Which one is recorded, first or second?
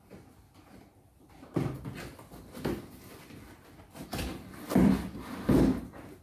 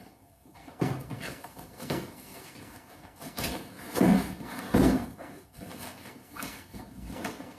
first